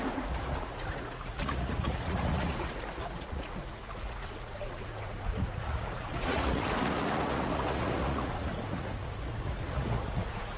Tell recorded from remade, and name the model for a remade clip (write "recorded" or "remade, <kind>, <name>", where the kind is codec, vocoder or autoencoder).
remade, vocoder, Vocos